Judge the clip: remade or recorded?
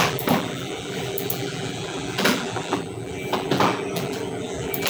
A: remade